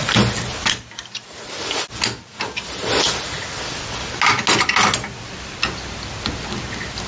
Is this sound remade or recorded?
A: recorded